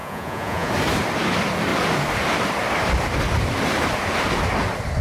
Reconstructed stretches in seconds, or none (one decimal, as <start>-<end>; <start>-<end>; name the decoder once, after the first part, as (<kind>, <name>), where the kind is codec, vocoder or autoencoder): 0.0-0.7 (vocoder, Vocos)